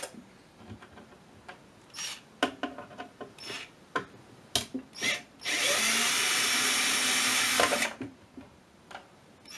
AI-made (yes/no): no